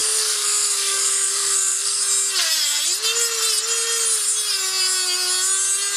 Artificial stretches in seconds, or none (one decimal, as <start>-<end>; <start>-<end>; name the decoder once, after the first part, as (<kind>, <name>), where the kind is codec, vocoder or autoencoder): 0.0-2.0 (codec, SNAC)